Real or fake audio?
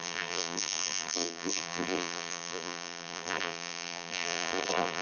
fake